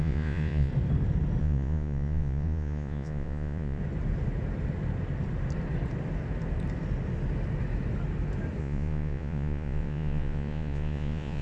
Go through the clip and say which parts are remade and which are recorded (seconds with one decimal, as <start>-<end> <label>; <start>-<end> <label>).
0.0-0.7 remade; 0.7-1.4 recorded; 1.4-3.8 remade; 3.8-8.6 recorded; 8.6-11.4 remade